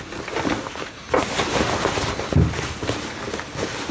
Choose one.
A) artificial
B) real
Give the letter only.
B